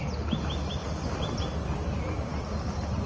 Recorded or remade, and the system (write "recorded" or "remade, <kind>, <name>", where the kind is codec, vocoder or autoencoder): recorded